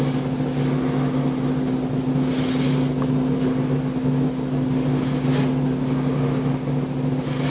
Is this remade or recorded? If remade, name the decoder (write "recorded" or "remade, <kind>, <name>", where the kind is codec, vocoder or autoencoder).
recorded